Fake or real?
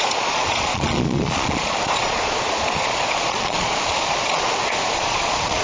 fake